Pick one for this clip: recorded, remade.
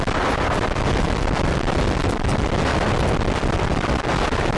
recorded